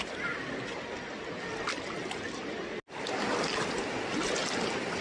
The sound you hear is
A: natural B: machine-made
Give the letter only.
A